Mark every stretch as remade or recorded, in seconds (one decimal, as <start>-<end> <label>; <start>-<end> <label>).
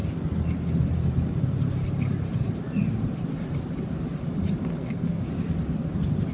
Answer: 0.0-4.7 recorded; 4.7-5.3 remade; 5.3-6.3 recorded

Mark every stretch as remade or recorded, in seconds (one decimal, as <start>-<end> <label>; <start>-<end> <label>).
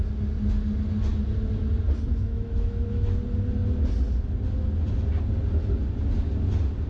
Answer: 0.0-2.1 recorded; 2.1-3.1 remade; 3.1-6.9 recorded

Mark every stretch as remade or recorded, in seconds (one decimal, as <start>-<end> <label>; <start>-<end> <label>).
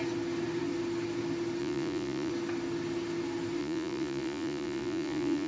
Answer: 0.0-1.6 recorded; 1.6-2.3 remade; 2.3-3.6 recorded; 3.6-5.5 remade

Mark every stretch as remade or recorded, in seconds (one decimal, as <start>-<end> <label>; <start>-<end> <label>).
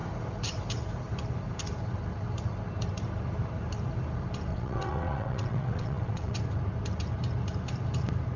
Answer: 0.0-4.5 recorded; 4.5-6.4 remade; 6.4-8.4 recorded